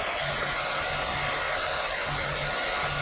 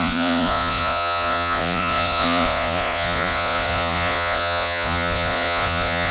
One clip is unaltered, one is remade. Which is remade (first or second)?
second